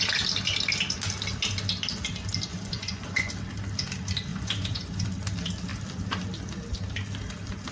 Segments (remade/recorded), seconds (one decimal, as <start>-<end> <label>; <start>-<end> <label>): 0.0-2.5 recorded; 2.5-3.3 remade; 3.3-4.3 recorded; 4.3-5.1 remade; 5.1-7.7 recorded